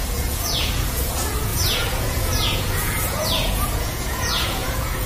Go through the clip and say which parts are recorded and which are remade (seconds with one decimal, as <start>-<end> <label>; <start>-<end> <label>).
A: 0.0-5.1 remade